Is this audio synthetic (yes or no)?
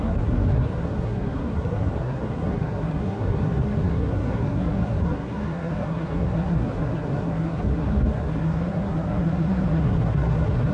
yes